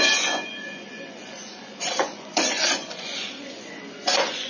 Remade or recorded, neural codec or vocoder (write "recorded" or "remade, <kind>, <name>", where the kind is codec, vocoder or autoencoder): remade, vocoder, Vocos